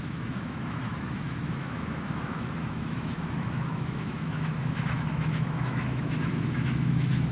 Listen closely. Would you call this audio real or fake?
fake